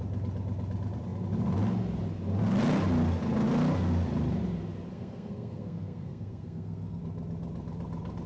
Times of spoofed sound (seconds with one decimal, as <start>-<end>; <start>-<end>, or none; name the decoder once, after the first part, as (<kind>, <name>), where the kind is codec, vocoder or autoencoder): 4.9-7.0 (codec, SNAC)

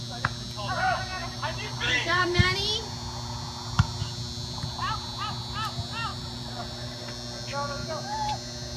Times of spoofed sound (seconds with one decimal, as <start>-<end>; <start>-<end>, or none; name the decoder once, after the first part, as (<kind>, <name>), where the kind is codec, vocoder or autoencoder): 1.2-2.4 (vocoder, BigVGAN v2); 6.1-7.1

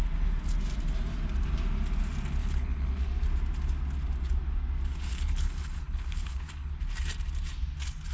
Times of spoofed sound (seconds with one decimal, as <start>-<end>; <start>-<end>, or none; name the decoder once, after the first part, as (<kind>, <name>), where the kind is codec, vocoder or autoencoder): 2.4-3.1 (codec, HILCodec); 5.1-6.7

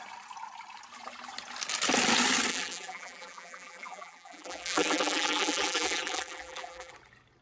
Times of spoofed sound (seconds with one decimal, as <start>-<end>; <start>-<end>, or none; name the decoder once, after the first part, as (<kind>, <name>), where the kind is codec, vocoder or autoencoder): 2.5-6.9 (vocoder, BigVGAN v2)